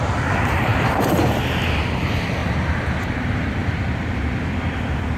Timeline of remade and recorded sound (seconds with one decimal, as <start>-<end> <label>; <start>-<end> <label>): 0.0-5.2 recorded